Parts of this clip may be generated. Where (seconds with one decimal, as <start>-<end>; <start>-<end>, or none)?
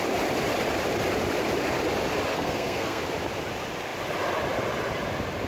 2.3-3.0